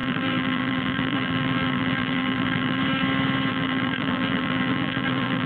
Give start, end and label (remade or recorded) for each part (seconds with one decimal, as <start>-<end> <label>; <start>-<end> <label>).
0.0-2.8 remade; 2.8-3.5 recorded; 3.5-5.5 remade